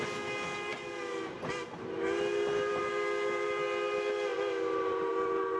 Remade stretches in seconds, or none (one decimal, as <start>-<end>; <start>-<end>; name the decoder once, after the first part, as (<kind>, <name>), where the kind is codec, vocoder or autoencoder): none